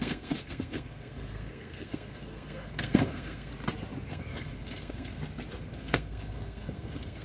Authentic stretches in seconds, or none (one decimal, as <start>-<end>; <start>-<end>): 3.5-4.1; 5.2-5.7